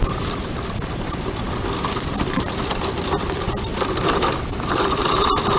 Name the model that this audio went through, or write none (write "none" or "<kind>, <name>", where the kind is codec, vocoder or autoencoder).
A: none